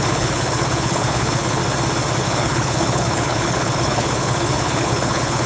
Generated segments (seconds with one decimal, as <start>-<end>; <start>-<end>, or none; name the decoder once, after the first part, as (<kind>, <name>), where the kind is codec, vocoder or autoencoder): 0.0-1.6 (codec, HILCodec); 2.2-5.5

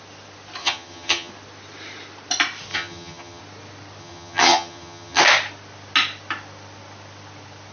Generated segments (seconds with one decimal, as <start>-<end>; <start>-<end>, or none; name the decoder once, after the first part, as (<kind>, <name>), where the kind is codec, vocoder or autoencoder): 0.6-1.3 (vocoder, HiFi-GAN); 2.7-3.4; 4.0-5.2